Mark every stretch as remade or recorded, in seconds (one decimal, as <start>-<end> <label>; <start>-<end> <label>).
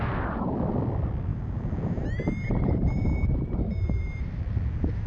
0.0-1.3 recorded; 1.3-4.4 remade; 4.4-5.1 recorded